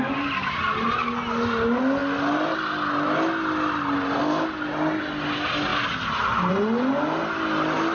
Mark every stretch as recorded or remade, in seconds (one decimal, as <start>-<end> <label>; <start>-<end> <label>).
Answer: 0.0-7.9 recorded